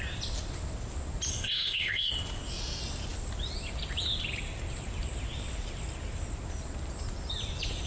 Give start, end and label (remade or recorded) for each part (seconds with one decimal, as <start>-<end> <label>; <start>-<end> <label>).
0.0-1.3 recorded; 1.3-2.1 remade; 2.1-7.9 recorded